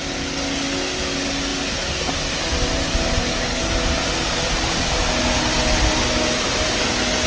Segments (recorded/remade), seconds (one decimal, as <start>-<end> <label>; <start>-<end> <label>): 0.0-3.2 recorded; 3.2-3.7 remade; 3.7-7.3 recorded